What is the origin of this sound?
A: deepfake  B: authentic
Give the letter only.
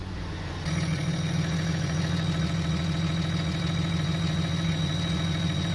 A